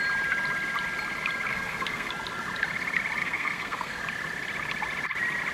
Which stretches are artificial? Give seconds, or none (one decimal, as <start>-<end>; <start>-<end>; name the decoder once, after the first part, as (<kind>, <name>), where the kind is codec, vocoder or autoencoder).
1.5-2.1 (codec, SNAC); 3.2-4.0